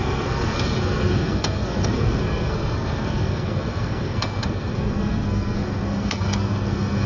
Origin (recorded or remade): remade